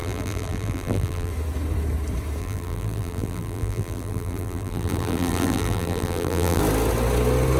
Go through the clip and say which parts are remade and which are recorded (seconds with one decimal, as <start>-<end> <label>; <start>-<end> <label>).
0.0-1.3 remade; 1.3-2.4 recorded; 2.4-6.6 remade; 6.6-7.6 recorded